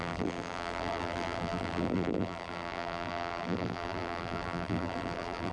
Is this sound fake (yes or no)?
yes